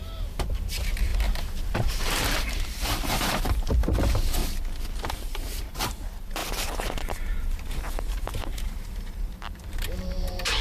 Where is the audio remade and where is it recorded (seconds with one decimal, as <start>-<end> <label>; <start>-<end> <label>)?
0.0-4.4 remade; 4.4-5.1 recorded; 5.1-10.6 remade